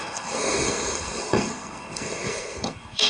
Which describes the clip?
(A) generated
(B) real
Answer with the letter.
A